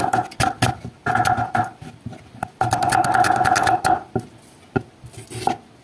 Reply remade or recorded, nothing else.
recorded